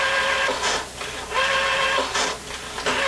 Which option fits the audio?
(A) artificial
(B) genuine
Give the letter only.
B